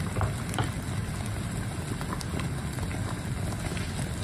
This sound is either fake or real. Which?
real